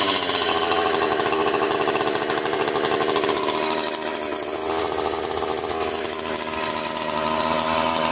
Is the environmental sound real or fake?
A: real